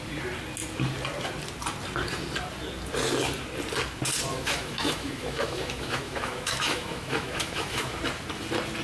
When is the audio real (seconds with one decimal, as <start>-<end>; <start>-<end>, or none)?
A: 0.0-4.3; 7.9-8.8

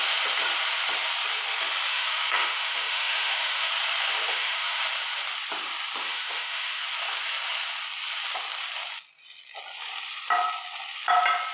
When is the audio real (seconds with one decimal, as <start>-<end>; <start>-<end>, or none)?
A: 0.0-1.9; 3.7-4.3; 4.8-6.0; 6.8-11.5

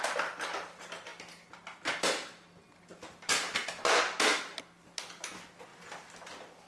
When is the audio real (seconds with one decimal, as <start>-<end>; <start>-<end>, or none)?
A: 0.0-6.7